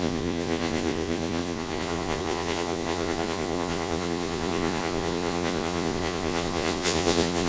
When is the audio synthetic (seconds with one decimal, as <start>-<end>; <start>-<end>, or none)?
0.0-7.5